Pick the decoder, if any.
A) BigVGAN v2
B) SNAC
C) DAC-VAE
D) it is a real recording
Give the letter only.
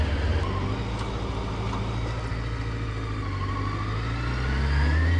D